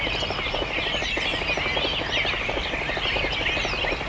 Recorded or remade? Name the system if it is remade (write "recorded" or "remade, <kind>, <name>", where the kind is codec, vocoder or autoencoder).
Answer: recorded